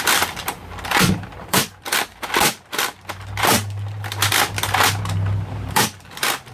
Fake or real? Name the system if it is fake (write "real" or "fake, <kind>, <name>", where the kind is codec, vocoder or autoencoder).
fake, vocoder, BigVGAN v2